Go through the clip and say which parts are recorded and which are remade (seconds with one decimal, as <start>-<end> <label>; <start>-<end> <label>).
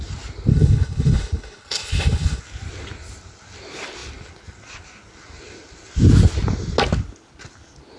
0.0-0.5 recorded; 0.5-2.4 remade; 2.4-8.0 recorded